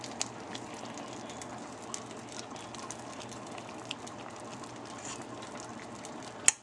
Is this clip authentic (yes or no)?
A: yes